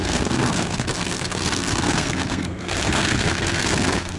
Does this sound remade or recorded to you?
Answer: remade